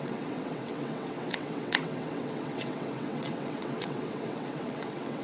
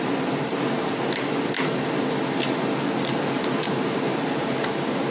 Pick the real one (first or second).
second